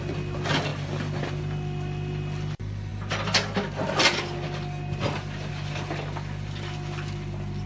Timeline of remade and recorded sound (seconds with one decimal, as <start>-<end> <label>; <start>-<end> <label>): 0.0-7.7 recorded